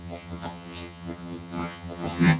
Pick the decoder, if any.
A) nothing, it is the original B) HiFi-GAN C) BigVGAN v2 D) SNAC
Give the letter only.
B